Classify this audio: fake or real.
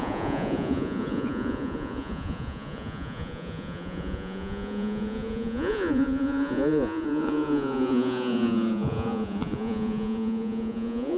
fake